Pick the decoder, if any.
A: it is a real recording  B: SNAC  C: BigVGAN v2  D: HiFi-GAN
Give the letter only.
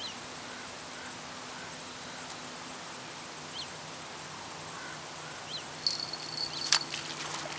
A